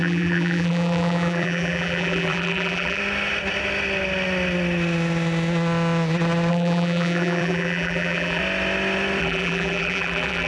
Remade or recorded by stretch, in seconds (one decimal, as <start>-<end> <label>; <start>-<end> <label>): 0.0-3.0 remade; 3.0-6.5 recorded; 6.5-8.4 remade; 8.4-9.2 recorded; 9.2-10.5 remade